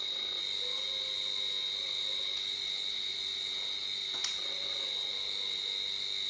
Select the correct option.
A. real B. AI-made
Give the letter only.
A